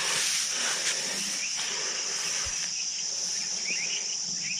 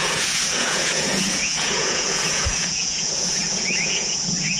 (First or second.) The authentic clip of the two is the first